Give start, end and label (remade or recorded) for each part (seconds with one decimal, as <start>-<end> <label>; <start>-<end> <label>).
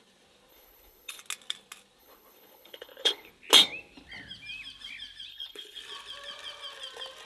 0.0-0.5 recorded; 0.5-1.2 remade; 1.2-2.0 recorded; 2.0-3.3 remade; 3.3-5.3 recorded; 5.3-5.8 remade; 5.8-7.3 recorded